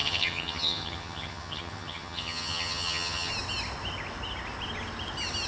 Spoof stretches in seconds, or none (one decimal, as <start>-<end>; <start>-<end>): 0.0-3.3